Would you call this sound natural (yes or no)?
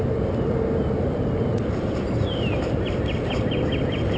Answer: yes